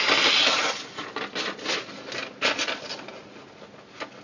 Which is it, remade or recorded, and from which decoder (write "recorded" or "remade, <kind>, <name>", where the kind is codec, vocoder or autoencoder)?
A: recorded